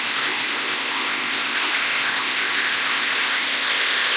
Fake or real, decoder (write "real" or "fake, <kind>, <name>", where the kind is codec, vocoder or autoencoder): fake, codec, ZipCodec